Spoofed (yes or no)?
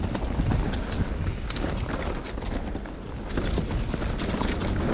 no